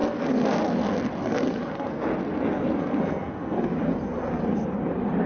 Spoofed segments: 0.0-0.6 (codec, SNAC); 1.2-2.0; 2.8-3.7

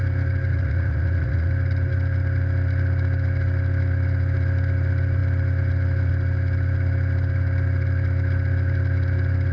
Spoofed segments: 0.5-1.5 (vocoder, Vocos)